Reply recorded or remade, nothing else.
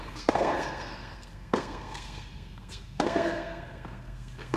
remade